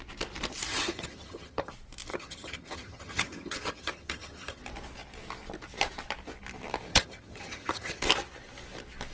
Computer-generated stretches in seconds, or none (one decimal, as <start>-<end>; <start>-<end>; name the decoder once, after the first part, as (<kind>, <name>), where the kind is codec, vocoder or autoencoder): 0.7-1.7 (vocoder, HiFi-GAN); 2.1-4.6; 6.9-8.0